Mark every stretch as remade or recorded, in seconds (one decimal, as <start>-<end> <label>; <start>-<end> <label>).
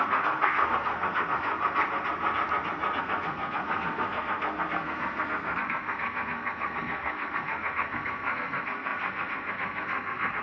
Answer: 0.0-1.5 remade; 1.5-3.0 recorded; 3.0-10.4 remade